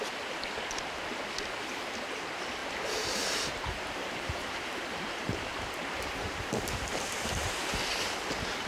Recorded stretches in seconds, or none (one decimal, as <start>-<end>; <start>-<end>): 0.0-2.6; 7.8-8.7